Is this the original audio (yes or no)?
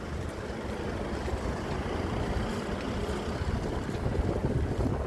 yes